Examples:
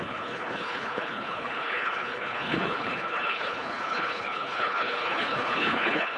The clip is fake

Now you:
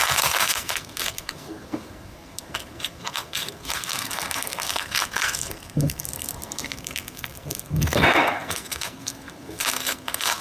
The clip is fake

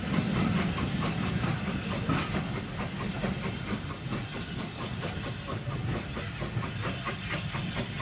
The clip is real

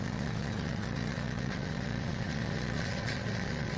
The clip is fake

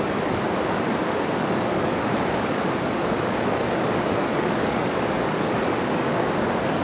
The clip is fake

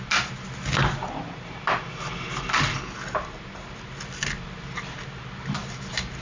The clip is real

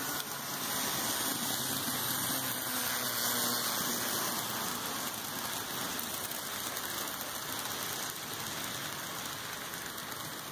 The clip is real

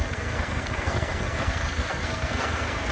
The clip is fake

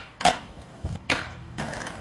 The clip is fake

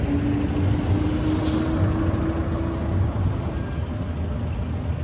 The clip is real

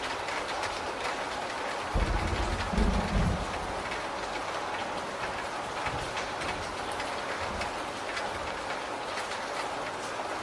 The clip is real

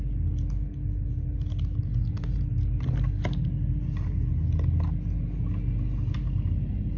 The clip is real